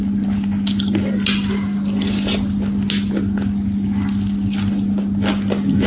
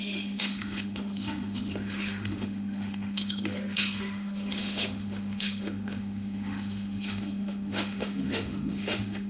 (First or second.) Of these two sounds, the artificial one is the second